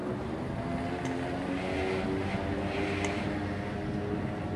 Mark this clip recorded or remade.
recorded